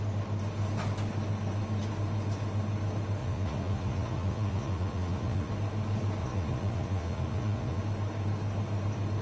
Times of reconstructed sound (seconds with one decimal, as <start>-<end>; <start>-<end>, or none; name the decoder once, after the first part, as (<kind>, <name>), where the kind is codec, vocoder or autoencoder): 3.2-5.5 (vocoder, Vocos); 6.2-7.8